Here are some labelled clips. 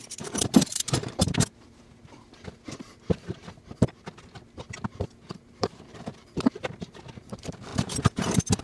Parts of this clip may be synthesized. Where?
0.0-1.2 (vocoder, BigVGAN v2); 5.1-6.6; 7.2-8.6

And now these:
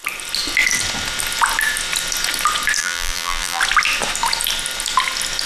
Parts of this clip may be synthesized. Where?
2.8-3.6 (vocoder, BigVGAN v2)